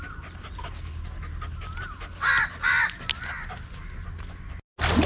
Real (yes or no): yes